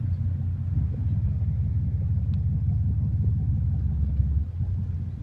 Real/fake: real